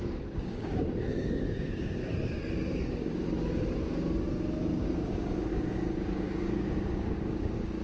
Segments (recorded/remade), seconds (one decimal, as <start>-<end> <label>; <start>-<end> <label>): 0.0-2.0 remade; 2.0-2.8 recorded; 2.8-3.2 remade; 3.2-4.7 recorded; 4.7-7.8 remade